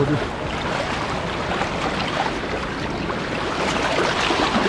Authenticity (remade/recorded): recorded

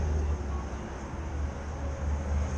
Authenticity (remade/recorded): recorded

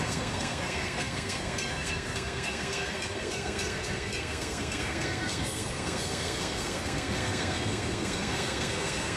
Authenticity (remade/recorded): remade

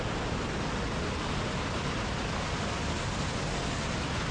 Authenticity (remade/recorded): recorded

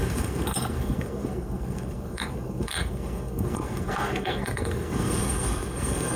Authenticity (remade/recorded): remade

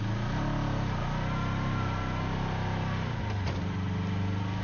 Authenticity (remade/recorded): recorded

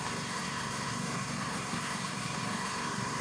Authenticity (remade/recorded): remade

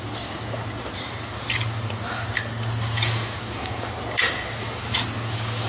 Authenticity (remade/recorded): recorded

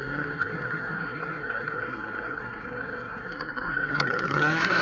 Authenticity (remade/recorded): remade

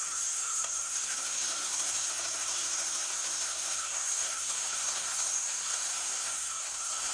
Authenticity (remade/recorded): remade